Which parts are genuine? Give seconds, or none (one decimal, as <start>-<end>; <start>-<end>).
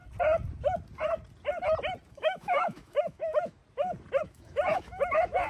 0.0-2.1; 3.6-4.2